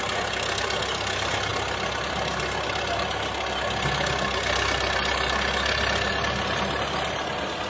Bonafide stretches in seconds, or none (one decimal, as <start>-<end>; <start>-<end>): 0.0-7.7